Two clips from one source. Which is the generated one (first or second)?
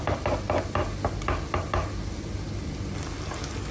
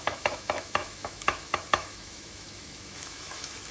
second